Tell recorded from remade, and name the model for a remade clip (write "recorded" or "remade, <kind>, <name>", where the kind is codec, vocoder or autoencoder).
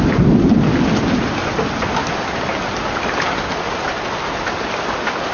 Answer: recorded